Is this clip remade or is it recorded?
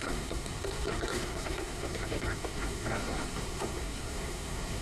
remade